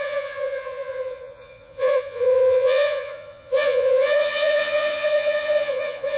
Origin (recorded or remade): remade